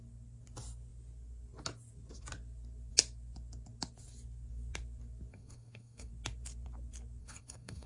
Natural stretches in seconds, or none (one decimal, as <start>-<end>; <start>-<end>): 0.0-5.3; 6.1-7.2